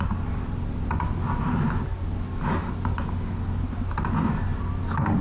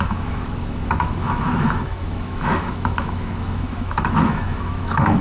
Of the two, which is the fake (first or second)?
second